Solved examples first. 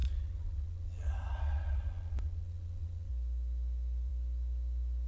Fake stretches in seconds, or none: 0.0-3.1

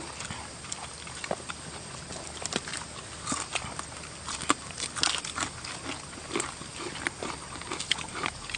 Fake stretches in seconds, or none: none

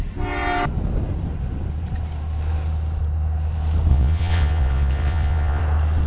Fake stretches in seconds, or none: 3.9-5.6

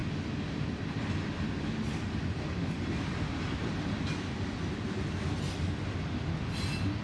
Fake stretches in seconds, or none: none

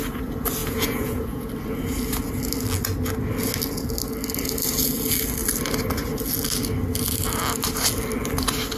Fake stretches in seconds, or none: 0.6-1.5

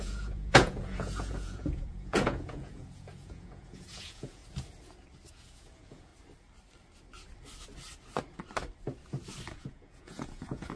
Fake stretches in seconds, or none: 0.0-4.4; 5.3-6.1; 9.5-10.8